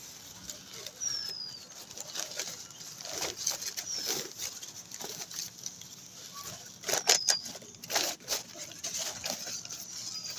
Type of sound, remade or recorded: recorded